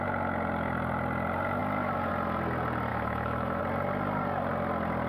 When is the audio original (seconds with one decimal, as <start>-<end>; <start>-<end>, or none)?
0.0-2.9; 3.6-5.1